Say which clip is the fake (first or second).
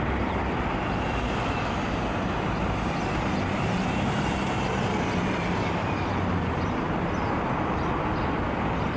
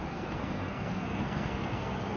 second